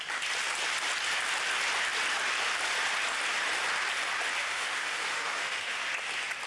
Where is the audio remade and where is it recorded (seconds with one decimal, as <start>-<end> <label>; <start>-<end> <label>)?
0.0-4.4 recorded; 4.4-5.8 remade; 5.8-6.5 recorded